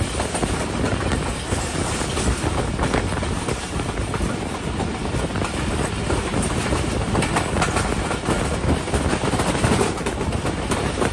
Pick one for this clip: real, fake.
real